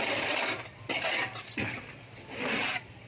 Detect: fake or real fake